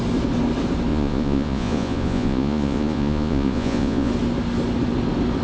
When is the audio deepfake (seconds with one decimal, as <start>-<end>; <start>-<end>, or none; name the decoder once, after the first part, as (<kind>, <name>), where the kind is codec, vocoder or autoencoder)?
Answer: 0.9-4.1 (vocoder, Vocos)